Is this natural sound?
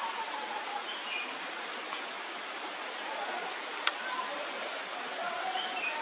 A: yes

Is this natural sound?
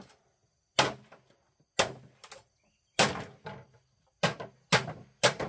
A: yes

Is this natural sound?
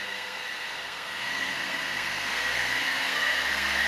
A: no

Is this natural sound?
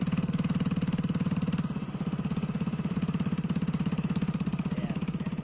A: no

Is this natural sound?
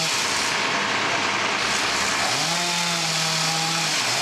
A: yes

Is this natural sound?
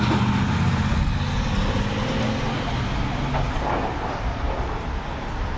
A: yes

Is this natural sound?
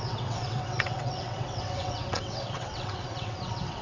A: no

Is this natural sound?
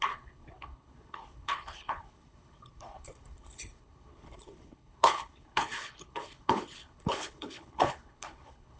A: no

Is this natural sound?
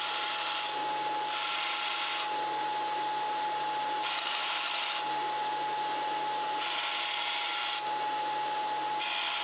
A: yes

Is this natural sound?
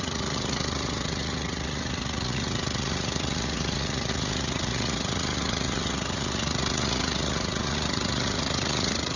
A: no